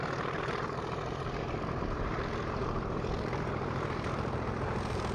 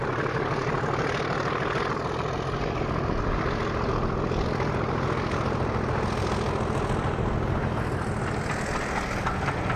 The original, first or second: second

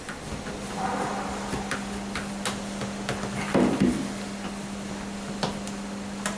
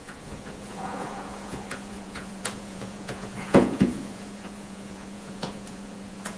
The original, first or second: first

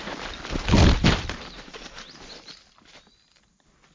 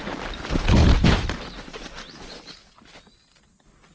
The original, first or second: second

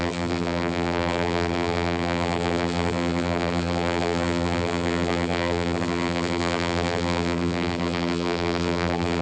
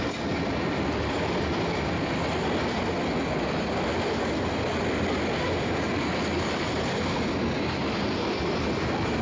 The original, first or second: second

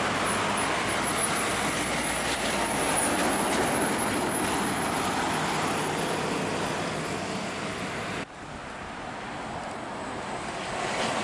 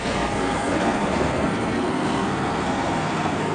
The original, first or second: first